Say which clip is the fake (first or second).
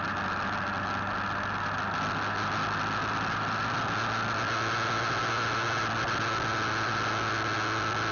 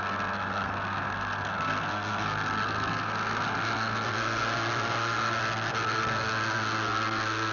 second